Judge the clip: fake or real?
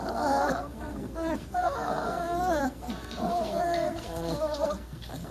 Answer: fake